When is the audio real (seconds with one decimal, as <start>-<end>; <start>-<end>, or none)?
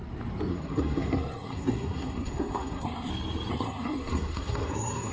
0.0-0.5; 3.1-3.5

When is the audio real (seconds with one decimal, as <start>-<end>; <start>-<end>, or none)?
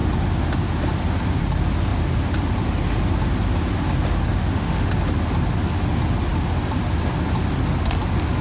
0.0-4.3; 4.9-8.4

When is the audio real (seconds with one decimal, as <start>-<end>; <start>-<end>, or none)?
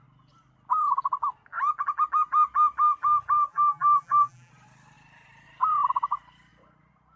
0.0-3.5; 4.5-7.2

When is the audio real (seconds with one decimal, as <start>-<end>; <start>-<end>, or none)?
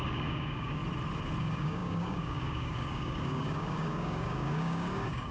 0.8-1.4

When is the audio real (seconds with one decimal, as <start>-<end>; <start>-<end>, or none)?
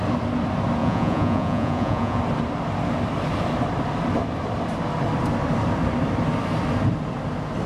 0.0-0.8; 2.2-7.7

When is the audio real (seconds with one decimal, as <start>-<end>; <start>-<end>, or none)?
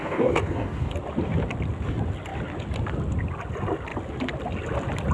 0.9-5.1